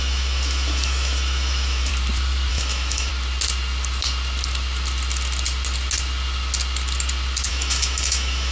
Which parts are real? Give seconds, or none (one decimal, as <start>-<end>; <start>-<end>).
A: 1.9-2.5; 3.1-7.5